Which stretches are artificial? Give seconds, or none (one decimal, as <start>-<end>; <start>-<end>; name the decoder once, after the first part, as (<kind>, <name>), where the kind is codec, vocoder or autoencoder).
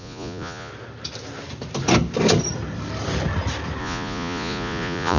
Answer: 0.0-0.7 (vocoder, Vocos); 3.8-5.2